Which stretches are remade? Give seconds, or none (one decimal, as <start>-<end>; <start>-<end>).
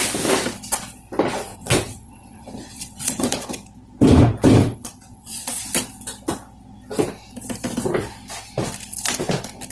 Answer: 1.5-3.4; 4.6-5.6